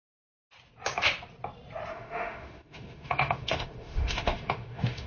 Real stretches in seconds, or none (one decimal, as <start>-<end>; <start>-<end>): 0.0-1.9